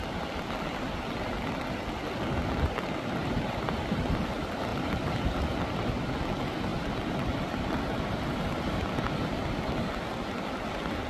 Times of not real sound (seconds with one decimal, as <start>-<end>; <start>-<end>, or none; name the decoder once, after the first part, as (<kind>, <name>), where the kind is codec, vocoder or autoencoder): 3.2-3.8 (vocoder, BigVGAN v2); 4.7-5.3